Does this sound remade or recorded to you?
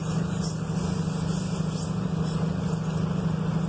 recorded